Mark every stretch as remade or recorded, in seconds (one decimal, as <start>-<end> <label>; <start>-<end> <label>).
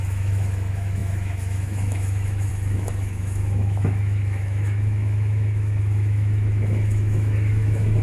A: 0.0-8.0 remade